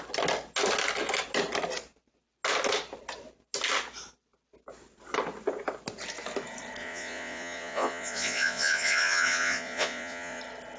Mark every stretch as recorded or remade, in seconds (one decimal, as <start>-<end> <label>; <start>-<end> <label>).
0.0-6.8 recorded; 6.8-10.4 remade; 10.4-10.8 recorded